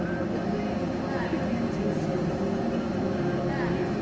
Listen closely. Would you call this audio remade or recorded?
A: recorded